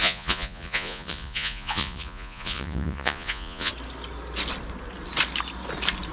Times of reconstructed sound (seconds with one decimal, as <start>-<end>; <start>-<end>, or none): 0.0-3.7